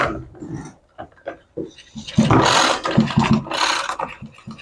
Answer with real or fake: real